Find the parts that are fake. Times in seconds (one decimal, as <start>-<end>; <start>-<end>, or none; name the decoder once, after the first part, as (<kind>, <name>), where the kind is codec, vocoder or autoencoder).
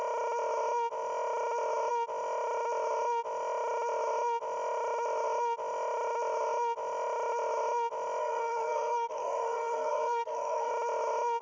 8.2-10.7 (codec, SNAC)